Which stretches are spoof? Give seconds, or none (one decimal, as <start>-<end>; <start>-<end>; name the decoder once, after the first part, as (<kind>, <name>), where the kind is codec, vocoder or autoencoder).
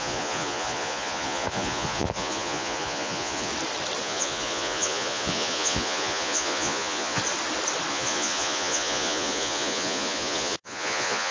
0.0-3.5 (vocoder, Vocos); 4.0-7.2; 7.9-11.3